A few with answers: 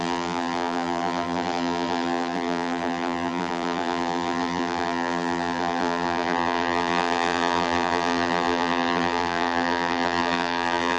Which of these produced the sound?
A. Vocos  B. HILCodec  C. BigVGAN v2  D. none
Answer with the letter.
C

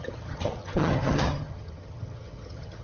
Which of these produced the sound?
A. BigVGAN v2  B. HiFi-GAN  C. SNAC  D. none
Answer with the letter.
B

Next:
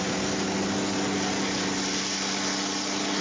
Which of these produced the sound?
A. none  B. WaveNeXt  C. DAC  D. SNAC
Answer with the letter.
A